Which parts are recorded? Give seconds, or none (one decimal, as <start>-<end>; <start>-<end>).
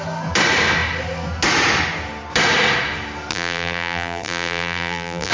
0.0-3.3